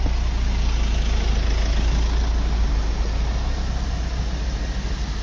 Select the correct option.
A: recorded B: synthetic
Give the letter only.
A